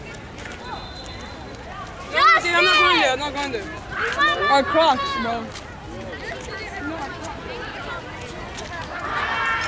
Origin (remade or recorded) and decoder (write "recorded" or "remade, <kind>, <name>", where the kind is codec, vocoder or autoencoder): recorded